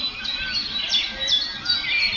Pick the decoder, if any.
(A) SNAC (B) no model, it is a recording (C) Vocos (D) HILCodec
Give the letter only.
B